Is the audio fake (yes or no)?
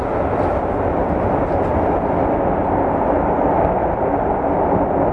no